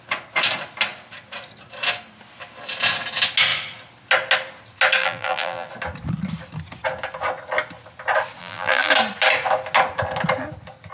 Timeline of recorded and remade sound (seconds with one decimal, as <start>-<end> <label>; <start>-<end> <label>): 0.0-5.0 recorded; 5.0-5.7 remade; 5.7-8.4 recorded; 8.4-8.9 remade; 8.9-10.9 recorded